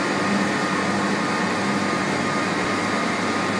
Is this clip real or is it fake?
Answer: real